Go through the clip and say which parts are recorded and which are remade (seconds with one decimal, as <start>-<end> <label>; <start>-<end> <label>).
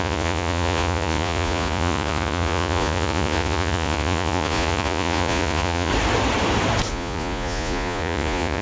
0.0-5.9 remade; 5.9-6.9 recorded; 6.9-8.6 remade